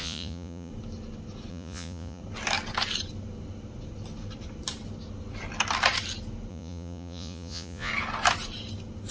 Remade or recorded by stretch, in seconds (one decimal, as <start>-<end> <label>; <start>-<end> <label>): 0.0-0.7 remade; 0.7-1.5 recorded; 1.5-2.2 remade; 2.2-6.5 recorded; 6.5-7.9 remade; 7.9-9.1 recorded